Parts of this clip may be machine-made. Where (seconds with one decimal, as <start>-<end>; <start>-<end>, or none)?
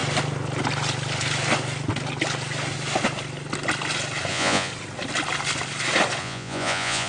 4.3-4.7; 6.2-7.1